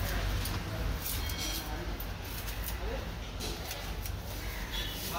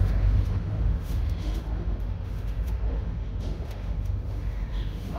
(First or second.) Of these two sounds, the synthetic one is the second